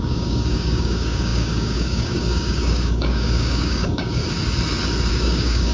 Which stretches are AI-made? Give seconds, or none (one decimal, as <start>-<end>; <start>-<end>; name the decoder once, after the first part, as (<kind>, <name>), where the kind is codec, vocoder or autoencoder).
0.0-4.2 (codec, DAC); 5.1-5.7